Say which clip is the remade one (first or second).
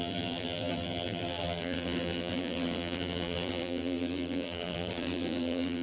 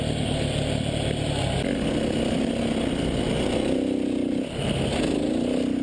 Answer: first